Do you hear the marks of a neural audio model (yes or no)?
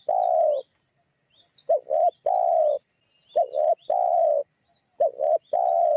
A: no